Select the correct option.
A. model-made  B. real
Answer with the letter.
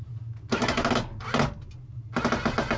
B